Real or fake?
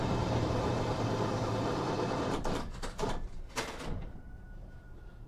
fake